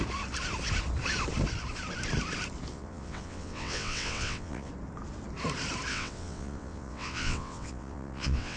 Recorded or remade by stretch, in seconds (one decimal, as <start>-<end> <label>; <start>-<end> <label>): 0.0-2.7 recorded; 2.7-4.7 remade; 4.7-5.9 recorded; 5.9-8.6 remade